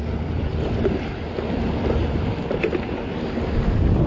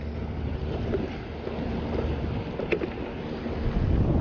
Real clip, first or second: second